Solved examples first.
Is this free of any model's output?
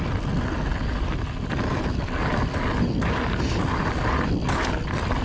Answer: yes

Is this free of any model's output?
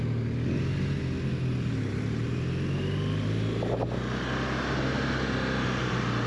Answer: yes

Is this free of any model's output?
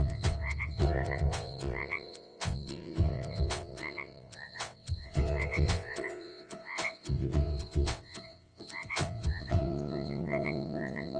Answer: no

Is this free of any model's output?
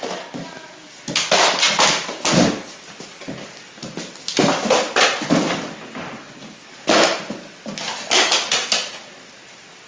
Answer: yes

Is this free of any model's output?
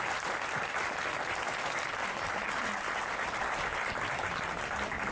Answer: yes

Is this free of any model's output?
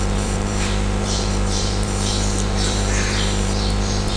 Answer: no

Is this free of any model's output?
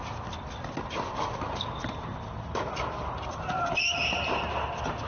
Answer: yes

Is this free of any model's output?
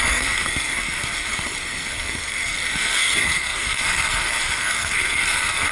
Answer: no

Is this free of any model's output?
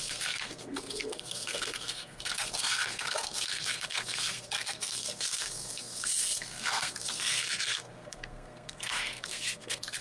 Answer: no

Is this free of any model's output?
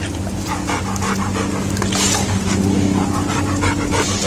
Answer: yes